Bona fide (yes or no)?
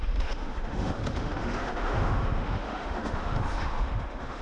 no